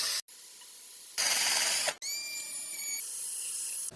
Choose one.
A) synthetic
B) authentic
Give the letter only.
B